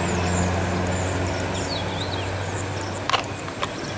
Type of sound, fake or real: real